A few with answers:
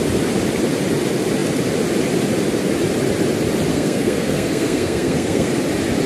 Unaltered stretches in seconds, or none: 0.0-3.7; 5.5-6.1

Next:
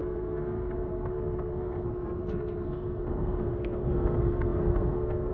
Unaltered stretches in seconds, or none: none

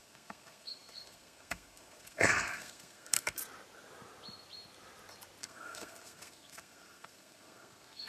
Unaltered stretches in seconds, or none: 3.4-5.4

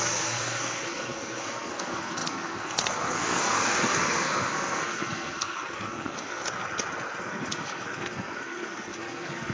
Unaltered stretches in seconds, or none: 6.4-7.2